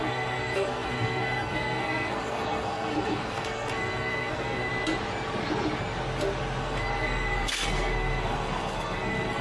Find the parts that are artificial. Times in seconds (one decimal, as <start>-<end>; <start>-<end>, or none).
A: 0.0-4.7; 6.6-9.4